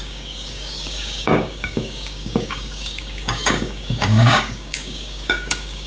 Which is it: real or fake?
fake